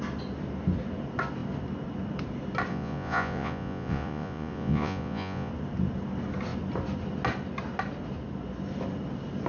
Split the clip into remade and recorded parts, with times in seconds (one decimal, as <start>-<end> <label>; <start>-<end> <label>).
0.0-2.7 recorded; 2.7-5.5 remade; 5.5-9.5 recorded